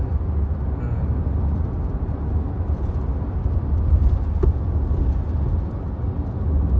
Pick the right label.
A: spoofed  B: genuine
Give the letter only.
B